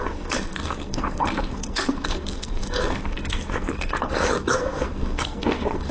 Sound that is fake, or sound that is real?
fake